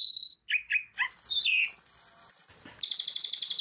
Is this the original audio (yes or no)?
yes